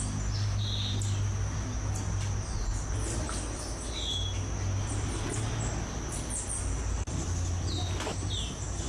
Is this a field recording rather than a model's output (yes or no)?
yes